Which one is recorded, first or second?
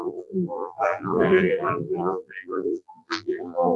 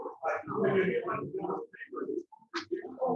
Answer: second